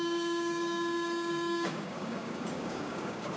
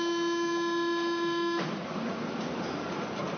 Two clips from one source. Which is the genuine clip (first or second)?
second